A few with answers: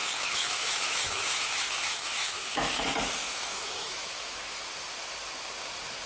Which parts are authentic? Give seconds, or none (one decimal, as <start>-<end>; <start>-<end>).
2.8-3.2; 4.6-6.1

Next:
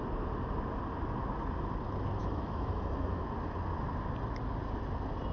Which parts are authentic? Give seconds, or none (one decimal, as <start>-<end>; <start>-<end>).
0.0-2.2; 3.2-5.3

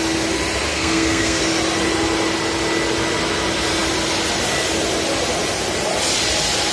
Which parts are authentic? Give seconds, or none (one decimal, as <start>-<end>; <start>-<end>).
0.0-0.7; 1.4-6.7

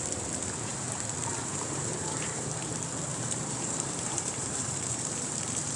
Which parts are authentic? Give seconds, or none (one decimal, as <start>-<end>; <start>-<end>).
0.0-0.7; 2.7-3.1

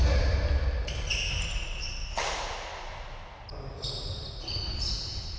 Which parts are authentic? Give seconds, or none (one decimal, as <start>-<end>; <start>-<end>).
0.0-5.4

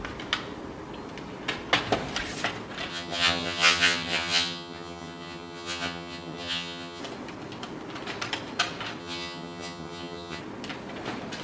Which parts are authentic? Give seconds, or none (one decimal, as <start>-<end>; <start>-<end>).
0.0-2.9; 7.0-9.0; 10.4-11.4